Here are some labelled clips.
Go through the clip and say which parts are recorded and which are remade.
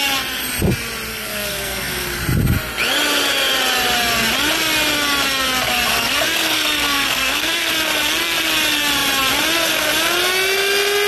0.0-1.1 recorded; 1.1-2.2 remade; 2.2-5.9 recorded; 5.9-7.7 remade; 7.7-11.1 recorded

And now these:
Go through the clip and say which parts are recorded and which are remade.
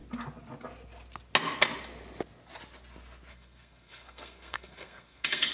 0.0-3.3 recorded; 3.3-5.5 remade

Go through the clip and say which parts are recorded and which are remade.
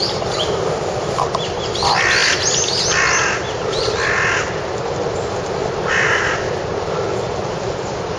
0.0-8.2 recorded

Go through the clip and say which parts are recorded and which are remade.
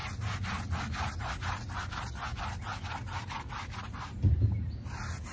0.0-5.3 recorded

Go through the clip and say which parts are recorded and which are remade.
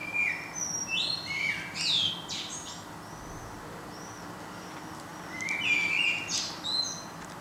0.0-7.4 recorded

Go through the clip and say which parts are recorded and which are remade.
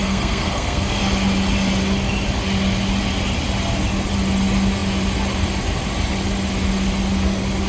0.0-1.0 remade; 1.0-7.7 recorded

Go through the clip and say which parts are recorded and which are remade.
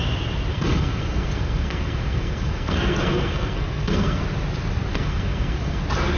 0.0-0.5 recorded; 0.5-4.2 remade; 4.2-4.9 recorded; 4.9-5.8 remade; 5.8-6.2 recorded